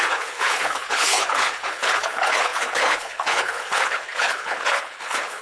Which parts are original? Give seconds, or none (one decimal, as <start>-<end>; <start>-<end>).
none